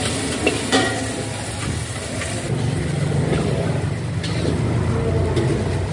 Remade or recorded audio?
recorded